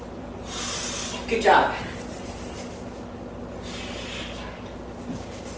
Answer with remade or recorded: recorded